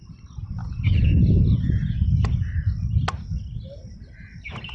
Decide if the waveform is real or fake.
real